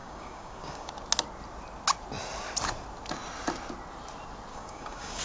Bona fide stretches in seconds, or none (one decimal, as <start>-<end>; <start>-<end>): 0.9-4.5